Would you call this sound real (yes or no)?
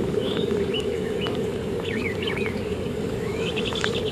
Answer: no